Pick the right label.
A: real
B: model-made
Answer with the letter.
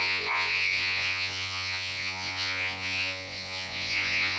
B